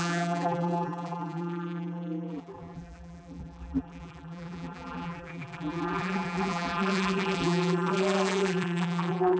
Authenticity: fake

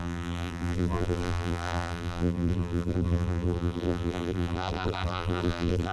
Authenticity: fake